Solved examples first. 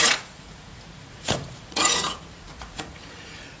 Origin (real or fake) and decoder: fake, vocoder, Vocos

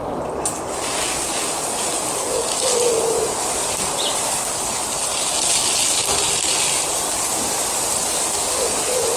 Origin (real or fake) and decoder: real